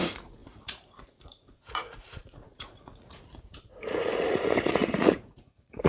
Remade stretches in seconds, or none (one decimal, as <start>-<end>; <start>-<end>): 0.0-5.9